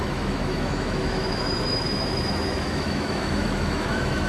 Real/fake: fake